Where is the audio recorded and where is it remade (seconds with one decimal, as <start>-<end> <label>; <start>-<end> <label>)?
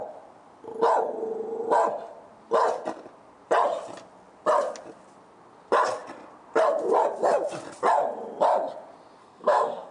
0.0-9.2 recorded; 9.2-9.9 remade